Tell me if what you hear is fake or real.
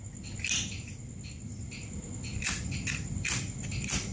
real